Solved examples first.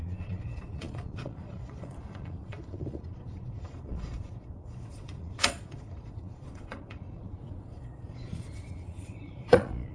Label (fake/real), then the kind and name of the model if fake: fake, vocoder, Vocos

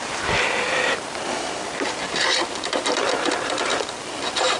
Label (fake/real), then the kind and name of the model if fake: fake, vocoder, BigVGAN v2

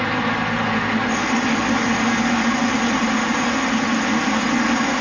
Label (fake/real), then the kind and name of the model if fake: real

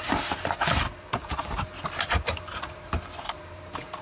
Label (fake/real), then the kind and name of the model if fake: fake, vocoder, BigVGAN v2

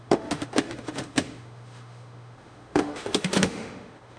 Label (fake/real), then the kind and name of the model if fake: fake, autoencoder, DAC-VAE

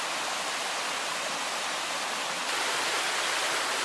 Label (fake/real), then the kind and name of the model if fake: real